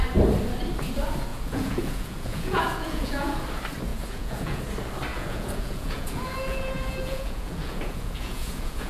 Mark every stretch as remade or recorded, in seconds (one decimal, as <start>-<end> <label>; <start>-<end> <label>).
0.0-1.3 recorded; 1.3-3.4 remade; 3.4-3.9 recorded; 3.9-4.6 remade; 4.6-5.1 recorded; 5.1-8.9 remade